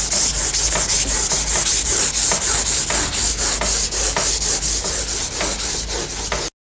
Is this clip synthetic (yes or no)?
no